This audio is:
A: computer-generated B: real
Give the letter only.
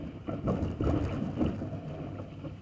B